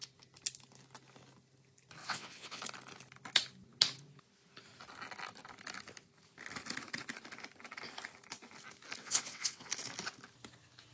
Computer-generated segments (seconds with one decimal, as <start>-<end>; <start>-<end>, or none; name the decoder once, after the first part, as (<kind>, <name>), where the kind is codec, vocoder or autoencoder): 2.0-2.6 (vocoder, WaveNeXt); 9.0-9.7